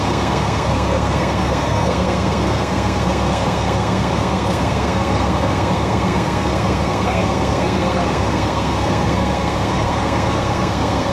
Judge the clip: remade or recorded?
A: remade